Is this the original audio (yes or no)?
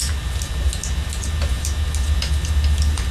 yes